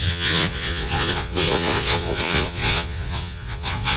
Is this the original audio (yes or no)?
no